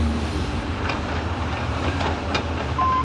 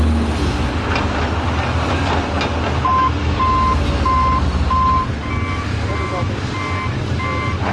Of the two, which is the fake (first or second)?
first